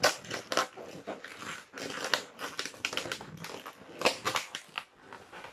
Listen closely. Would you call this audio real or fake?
real